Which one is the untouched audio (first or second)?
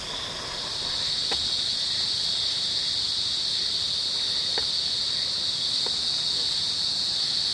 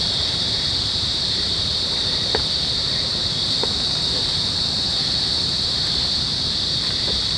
first